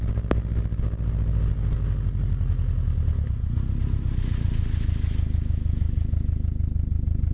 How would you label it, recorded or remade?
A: recorded